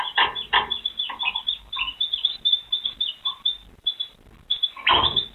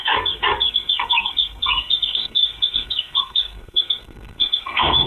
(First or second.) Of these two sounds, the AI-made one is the second